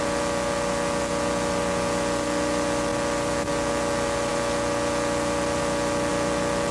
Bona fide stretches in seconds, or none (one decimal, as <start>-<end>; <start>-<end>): 0.0-6.7